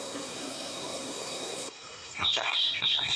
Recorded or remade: remade